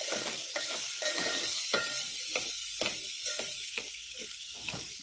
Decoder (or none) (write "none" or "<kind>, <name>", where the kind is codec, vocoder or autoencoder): codec, DAC